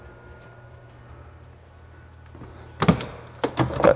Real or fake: real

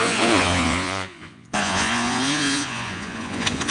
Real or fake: fake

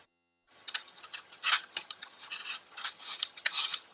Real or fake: fake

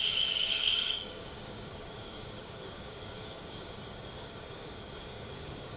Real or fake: fake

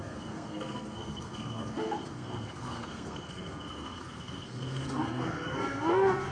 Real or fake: fake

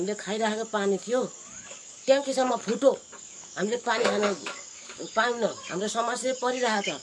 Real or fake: fake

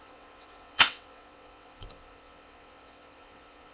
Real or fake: fake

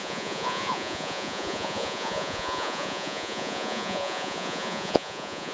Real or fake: fake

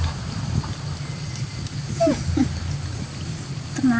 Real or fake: real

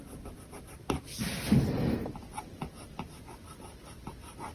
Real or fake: real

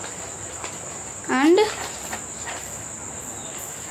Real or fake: real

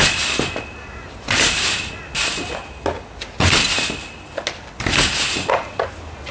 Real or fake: real